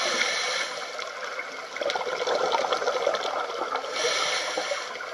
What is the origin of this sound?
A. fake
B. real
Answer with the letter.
B